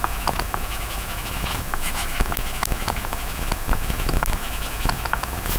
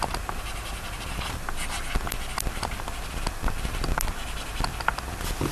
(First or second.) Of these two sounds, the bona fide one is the second